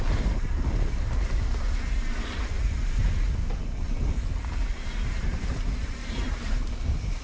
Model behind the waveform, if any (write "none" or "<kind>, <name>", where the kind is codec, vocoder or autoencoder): none